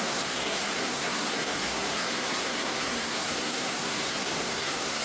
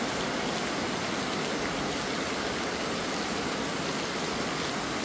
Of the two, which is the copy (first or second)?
first